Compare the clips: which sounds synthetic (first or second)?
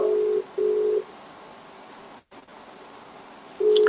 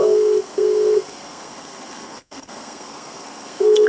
second